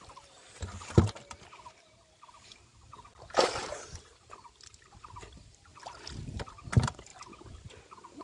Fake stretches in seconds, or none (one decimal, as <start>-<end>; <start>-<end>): 0.0-0.4; 2.3-5.7; 6.5-7.1